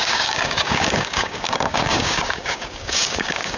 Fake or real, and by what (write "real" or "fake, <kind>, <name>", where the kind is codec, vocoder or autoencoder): fake, codec, DAC